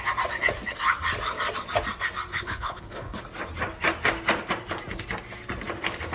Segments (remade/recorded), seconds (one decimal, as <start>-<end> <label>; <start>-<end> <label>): 0.0-2.3 recorded; 2.3-3.2 remade; 3.2-6.1 recorded